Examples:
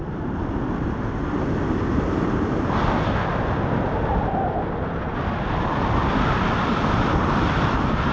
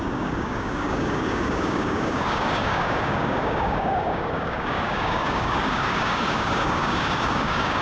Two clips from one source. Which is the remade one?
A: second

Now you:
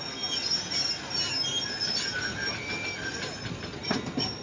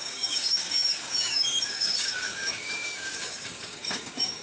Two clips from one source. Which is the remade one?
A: second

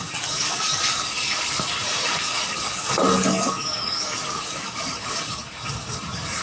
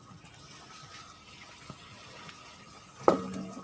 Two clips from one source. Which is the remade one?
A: first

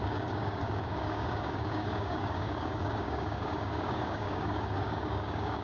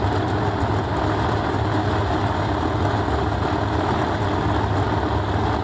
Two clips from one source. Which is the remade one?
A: first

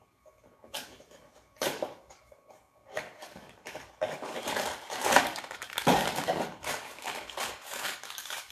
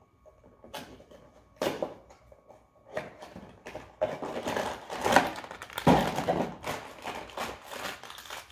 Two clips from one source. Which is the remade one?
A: first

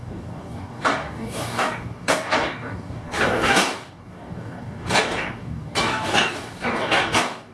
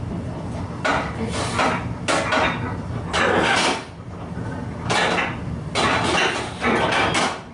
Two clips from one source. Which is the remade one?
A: first